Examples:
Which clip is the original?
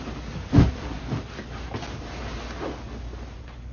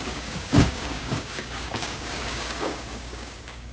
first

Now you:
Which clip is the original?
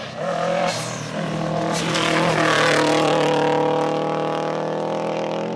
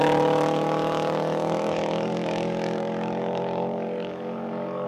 first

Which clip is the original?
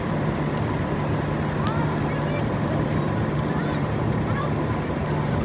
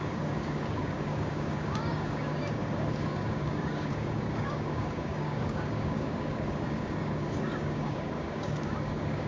first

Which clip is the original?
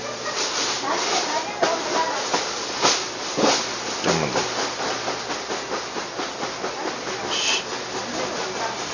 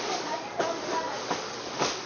first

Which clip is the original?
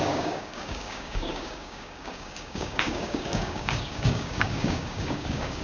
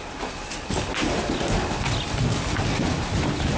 second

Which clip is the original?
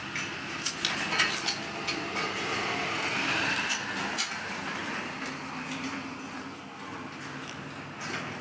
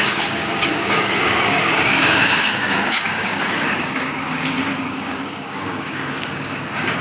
first